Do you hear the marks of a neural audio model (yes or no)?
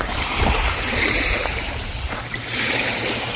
yes